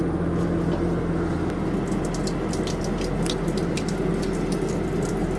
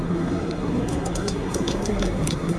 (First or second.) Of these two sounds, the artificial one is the second